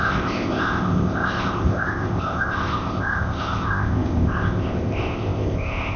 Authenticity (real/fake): fake